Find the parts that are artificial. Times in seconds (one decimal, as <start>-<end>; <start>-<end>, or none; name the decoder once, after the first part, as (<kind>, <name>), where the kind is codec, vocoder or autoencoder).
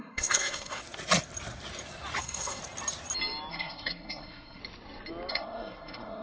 0.0-0.8 (codec, SNAC); 2.2-2.6; 3.5-4.6; 5.3-6.2